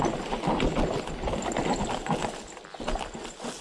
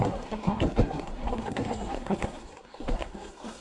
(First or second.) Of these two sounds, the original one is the first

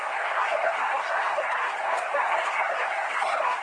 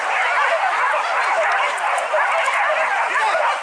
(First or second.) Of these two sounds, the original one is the second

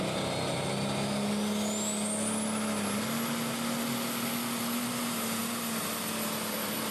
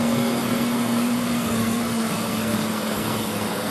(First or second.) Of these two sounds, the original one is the first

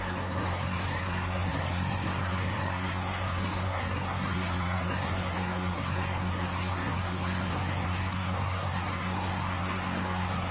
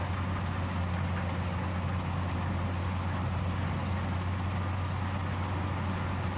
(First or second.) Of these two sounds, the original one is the second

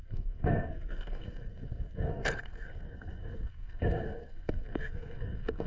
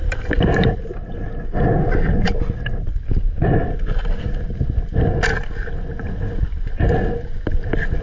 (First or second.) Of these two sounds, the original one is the second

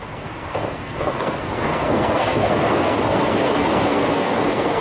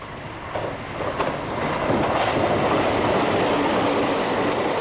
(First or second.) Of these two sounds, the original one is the second